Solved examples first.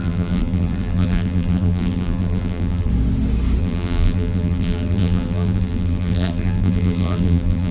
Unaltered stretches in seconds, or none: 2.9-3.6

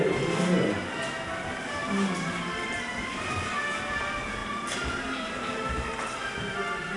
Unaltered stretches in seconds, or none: 0.0-1.8; 3.3-4.4